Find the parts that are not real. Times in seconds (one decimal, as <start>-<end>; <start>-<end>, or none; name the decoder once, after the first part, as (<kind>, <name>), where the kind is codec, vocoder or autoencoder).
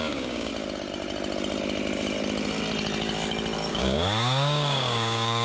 0.0-0.5 (codec, DAC); 3.7-5.4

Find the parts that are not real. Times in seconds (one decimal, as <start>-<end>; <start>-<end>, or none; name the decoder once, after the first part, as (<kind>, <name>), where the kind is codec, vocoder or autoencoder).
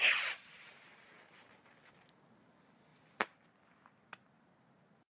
none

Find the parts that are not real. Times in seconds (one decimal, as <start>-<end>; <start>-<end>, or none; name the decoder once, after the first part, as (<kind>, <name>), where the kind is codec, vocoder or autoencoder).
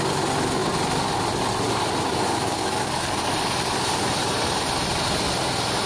2.1-3.3 (codec, DAC)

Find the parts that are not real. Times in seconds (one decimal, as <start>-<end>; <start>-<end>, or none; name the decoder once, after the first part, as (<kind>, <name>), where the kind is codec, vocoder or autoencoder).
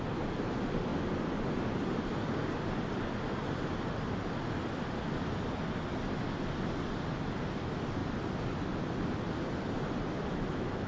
none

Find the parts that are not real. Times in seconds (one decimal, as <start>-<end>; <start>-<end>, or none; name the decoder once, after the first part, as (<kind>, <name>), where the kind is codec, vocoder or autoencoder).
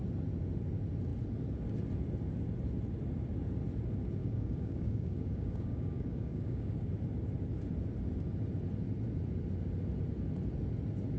4.2-6.9 (codec, DAC)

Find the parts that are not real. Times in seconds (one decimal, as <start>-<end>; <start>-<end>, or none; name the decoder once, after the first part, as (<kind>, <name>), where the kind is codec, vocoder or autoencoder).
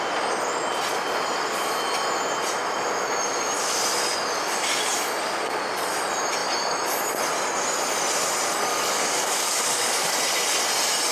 8.7-10.2 (codec, DAC)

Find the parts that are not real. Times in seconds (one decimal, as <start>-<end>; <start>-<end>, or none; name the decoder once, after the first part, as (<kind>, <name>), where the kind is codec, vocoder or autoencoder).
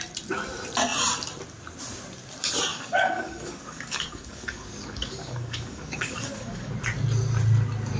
2.7-6.7 (codec, DAC)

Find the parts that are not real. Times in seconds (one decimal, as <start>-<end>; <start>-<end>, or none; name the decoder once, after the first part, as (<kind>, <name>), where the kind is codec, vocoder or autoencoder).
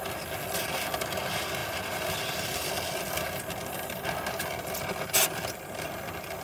none